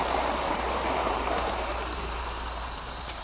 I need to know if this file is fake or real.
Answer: fake